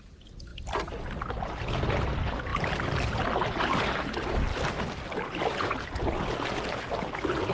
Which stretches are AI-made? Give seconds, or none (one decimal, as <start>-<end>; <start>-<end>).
4.5-5.7

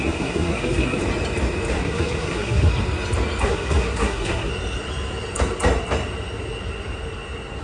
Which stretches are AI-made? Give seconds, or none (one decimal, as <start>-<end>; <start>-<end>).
0.0-1.0; 1.7-2.7; 3.4-4.5

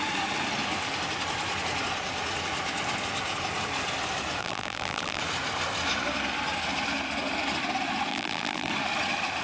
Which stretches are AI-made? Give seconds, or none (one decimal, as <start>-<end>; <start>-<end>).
4.4-5.2; 8.1-8.7

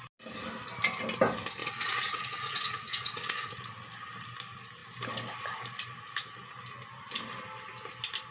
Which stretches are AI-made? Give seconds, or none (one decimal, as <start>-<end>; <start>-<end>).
1.6-3.5

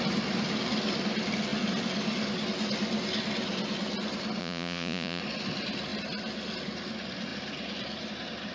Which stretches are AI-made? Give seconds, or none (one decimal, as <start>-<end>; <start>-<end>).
4.4-5.2

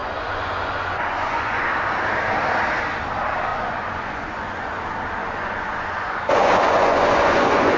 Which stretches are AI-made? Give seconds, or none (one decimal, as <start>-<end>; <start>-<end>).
0.0-1.7; 3.5-4.7; 5.2-7.8

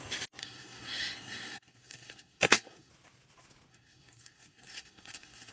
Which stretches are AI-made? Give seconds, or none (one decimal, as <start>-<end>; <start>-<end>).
0.4-2.9; 3.7-5.5